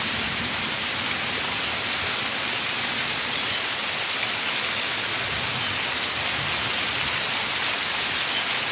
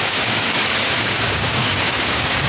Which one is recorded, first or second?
first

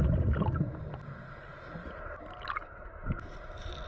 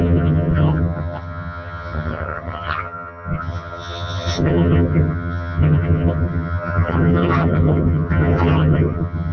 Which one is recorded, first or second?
first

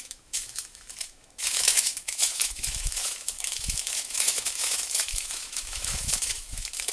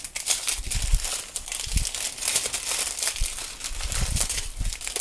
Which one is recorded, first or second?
second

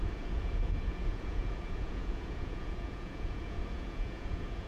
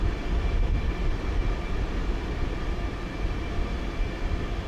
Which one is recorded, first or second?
second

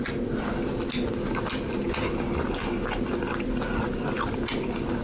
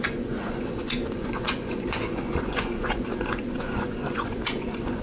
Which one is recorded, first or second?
first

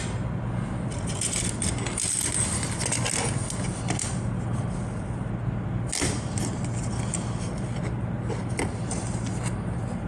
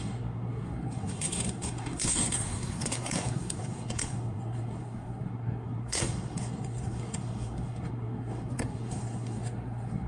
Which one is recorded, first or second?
first